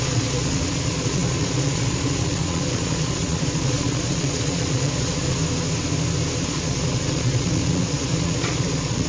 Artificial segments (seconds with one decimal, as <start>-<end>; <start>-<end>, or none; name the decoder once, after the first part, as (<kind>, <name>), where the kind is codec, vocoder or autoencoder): 0.0-5.4 (vocoder, Vocos); 6.4-9.1